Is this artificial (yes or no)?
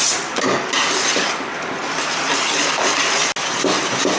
no